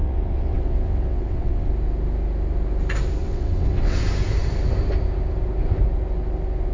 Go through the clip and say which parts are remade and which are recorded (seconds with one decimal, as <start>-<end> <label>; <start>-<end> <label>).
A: 0.0-1.7 remade; 1.7-3.2 recorded; 3.2-4.0 remade; 4.0-6.7 recorded